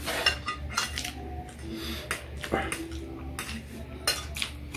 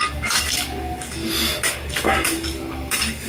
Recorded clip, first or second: first